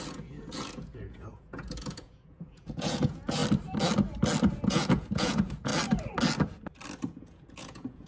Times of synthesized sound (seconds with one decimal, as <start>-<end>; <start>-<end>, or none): 0.0-3.4; 4.5-5.7; 7.0-8.1